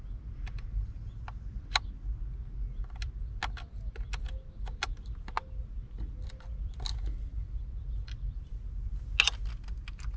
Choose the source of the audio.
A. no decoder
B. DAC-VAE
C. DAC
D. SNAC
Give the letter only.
A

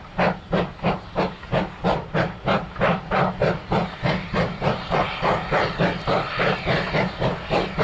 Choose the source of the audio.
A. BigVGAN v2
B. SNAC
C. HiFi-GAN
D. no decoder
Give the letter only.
D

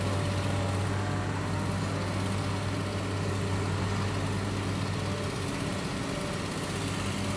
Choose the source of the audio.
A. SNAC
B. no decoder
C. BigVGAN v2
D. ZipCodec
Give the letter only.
B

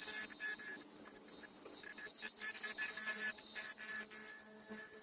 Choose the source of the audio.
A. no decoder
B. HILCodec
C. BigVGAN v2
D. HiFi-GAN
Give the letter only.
A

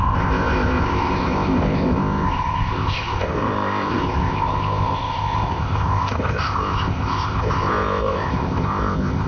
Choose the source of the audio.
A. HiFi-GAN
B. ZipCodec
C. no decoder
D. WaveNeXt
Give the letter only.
B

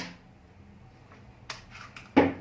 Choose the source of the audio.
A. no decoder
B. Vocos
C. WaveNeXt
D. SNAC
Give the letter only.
A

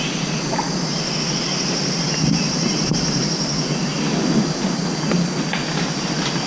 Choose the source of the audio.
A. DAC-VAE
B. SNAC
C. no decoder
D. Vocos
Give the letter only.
C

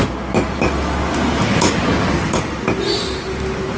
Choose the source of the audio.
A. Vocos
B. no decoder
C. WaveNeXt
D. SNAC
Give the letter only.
B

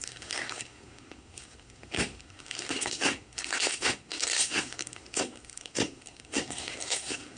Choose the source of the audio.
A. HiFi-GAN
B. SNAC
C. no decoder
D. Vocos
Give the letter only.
B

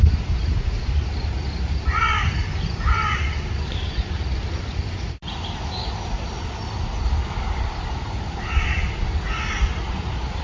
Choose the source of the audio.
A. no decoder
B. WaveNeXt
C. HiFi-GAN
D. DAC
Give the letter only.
A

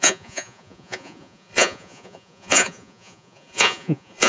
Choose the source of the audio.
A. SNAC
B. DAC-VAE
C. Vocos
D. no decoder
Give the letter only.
C